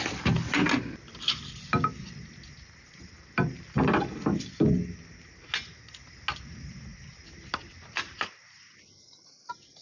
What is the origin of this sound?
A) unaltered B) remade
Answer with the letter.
A